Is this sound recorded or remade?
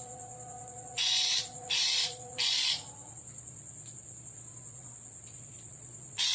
remade